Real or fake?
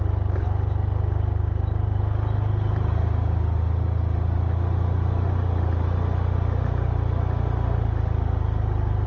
real